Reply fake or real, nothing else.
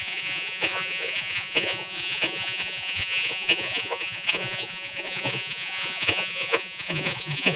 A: fake